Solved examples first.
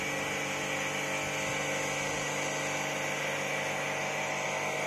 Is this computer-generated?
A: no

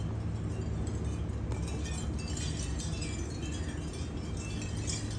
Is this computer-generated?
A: no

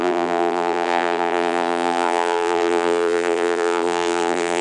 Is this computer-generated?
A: yes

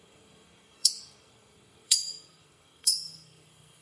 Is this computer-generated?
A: yes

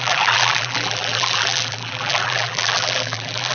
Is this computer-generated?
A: yes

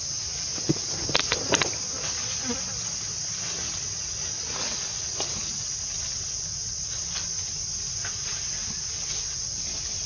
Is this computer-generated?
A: no